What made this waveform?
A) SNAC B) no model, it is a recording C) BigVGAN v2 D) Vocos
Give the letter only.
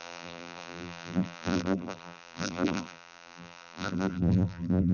C